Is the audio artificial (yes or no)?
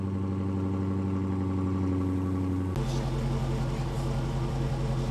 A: no